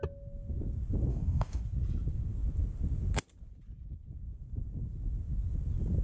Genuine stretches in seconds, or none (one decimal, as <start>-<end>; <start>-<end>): 0.0-1.1; 1.6-6.0